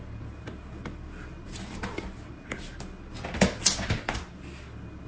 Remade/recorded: recorded